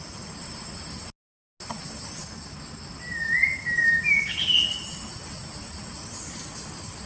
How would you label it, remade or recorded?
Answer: recorded